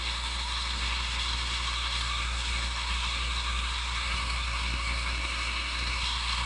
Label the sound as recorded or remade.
remade